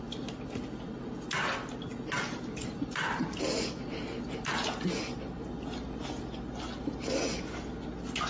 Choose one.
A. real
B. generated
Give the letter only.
A